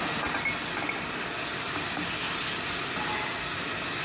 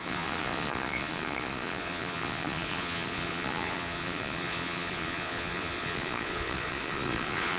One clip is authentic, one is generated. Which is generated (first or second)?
second